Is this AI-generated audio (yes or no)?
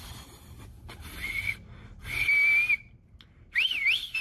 no